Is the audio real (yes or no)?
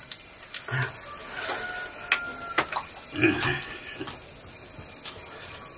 yes